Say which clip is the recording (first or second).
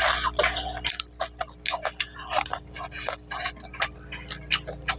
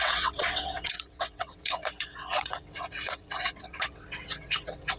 first